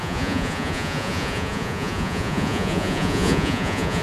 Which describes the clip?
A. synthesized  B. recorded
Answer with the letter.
A